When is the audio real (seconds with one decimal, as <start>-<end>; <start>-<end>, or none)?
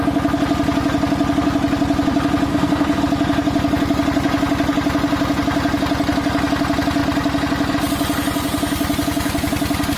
0.0-2.5; 3.0-10.0